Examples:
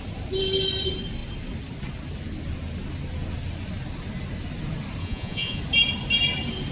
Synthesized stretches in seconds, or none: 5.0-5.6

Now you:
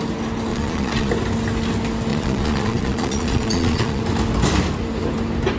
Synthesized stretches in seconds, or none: 0.5-1.1; 2.1-4.0

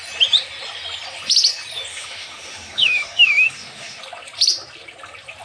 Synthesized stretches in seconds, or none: 1.9-4.0

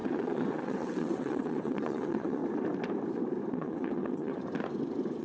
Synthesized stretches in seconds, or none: 0.0-2.4; 3.5-4.4

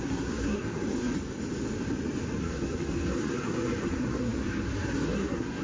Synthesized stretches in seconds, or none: 0.0-1.1; 2.4-5.6